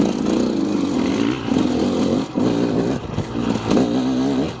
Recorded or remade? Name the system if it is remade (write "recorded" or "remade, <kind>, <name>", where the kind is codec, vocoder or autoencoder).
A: recorded